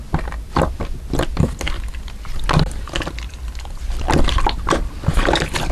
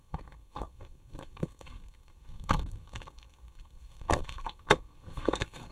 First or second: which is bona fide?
first